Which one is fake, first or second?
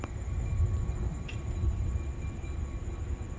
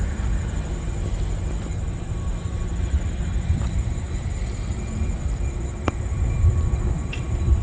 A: second